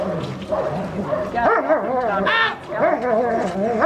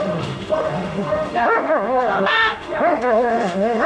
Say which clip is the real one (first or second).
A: first